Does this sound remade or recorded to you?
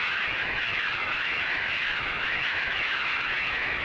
remade